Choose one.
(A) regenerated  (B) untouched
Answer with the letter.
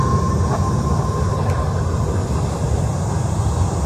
B